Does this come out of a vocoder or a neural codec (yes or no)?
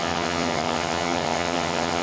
yes